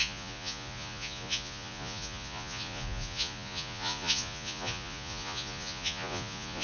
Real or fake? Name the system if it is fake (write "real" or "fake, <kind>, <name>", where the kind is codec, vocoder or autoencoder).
fake, vocoder, Vocos